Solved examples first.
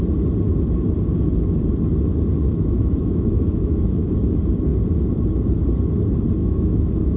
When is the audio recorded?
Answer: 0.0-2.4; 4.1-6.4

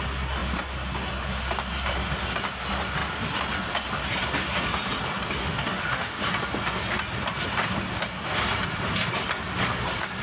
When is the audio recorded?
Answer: 0.0-5.4; 6.2-10.2

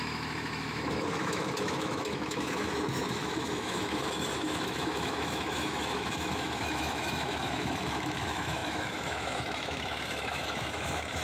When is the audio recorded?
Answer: none

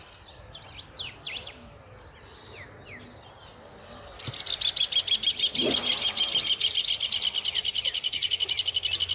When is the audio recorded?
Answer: 0.0-9.1

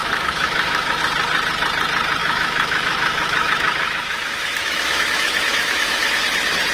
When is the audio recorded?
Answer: 1.0-2.2; 6.2-6.7

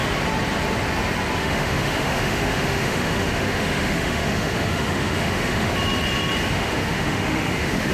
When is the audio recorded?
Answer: 0.0-1.4; 5.7-6.5

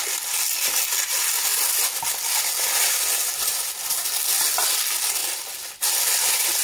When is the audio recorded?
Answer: 0.0-6.6

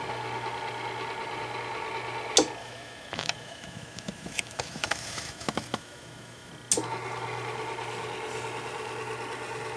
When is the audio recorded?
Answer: 0.0-2.6; 6.5-9.8